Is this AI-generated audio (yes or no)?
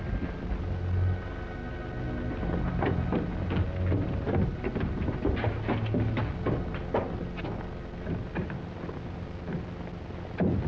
no